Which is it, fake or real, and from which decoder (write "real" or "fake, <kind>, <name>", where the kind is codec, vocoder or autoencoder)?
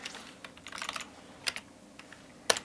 real